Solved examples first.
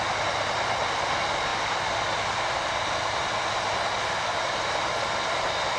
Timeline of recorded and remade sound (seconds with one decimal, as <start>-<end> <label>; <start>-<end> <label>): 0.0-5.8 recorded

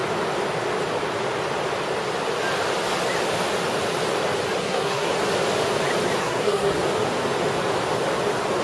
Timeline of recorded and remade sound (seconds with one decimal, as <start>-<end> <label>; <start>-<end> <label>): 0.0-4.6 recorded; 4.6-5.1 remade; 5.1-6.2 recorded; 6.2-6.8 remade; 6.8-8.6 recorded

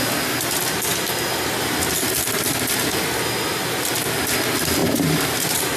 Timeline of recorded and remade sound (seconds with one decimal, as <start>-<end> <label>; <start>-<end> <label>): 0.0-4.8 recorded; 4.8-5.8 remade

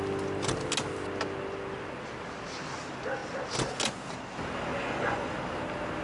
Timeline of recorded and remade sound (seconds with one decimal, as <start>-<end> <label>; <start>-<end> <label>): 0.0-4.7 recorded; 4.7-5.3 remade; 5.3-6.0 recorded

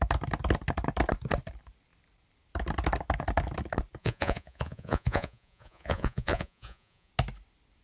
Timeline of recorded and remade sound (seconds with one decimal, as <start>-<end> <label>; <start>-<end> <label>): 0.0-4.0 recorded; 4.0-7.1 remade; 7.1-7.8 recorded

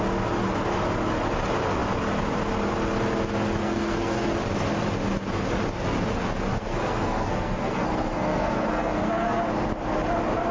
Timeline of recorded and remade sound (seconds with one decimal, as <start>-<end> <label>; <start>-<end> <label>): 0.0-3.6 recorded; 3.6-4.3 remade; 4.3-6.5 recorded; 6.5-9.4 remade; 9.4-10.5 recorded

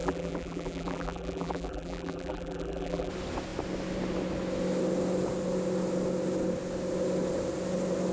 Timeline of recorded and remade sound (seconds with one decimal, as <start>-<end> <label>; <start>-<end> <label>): 0.0-3.1 remade; 3.1-8.1 recorded

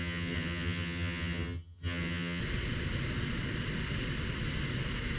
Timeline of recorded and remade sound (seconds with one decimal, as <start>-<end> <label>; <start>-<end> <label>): 0.0-2.4 remade; 2.4-5.2 recorded